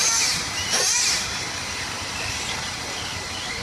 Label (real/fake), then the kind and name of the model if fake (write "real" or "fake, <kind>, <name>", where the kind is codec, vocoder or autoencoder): fake, vocoder, BigVGAN v2